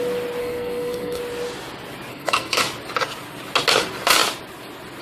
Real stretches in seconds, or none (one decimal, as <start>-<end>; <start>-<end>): 0.0-0.4; 1.2-2.1; 2.6-5.0